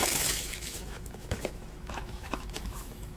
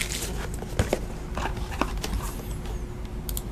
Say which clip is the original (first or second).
second